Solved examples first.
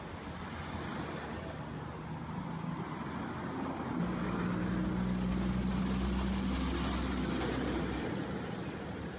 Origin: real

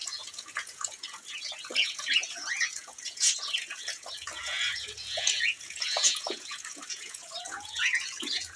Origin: fake